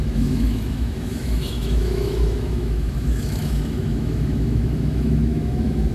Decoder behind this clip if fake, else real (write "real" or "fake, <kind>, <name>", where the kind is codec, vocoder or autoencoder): fake, autoencoder, DAC-VAE